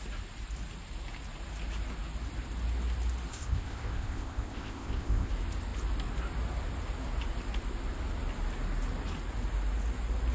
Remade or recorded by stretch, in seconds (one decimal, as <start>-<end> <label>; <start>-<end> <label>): 0.0-3.3 recorded; 3.3-5.3 remade; 5.3-10.3 recorded